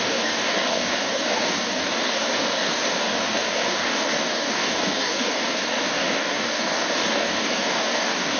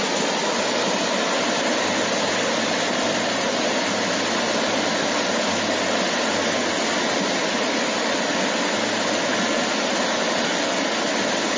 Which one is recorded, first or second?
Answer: second